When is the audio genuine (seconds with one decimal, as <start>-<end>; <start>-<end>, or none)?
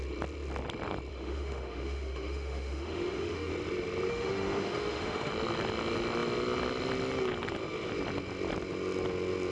0.0-1.1; 3.5-4.1; 5.3-9.5